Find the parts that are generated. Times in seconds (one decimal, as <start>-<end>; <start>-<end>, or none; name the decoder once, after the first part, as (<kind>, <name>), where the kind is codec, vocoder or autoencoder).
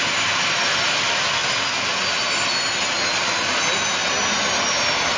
none